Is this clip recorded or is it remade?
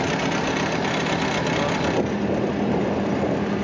recorded